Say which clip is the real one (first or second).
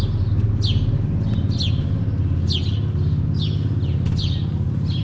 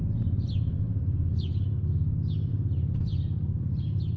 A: first